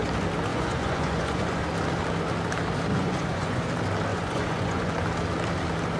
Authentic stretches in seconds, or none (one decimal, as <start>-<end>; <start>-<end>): 0.0-0.5; 1.6-2.9; 3.6-4.1; 4.9-6.0